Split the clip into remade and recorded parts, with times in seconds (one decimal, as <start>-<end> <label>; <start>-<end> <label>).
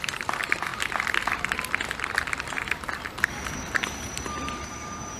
0.0-5.2 recorded